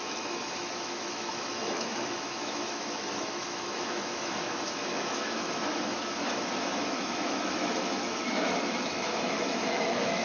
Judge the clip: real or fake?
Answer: fake